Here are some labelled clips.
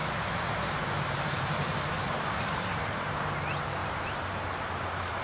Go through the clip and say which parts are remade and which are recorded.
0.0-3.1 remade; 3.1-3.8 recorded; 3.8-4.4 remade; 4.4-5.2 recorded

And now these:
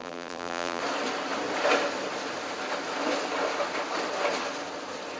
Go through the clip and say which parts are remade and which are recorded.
0.0-0.8 remade; 0.8-5.2 recorded

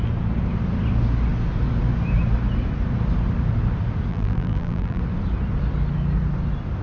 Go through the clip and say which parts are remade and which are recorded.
0.0-4.1 recorded; 4.1-5.0 remade; 5.0-6.8 recorded

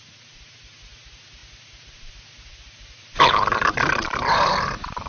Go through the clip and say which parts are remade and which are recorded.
0.0-5.1 recorded

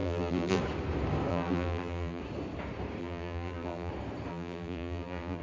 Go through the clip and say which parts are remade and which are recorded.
0.0-0.6 remade; 0.6-1.3 recorded; 1.3-2.2 remade; 2.2-3.0 recorded; 3.0-3.9 remade; 3.9-4.3 recorded; 4.3-5.4 remade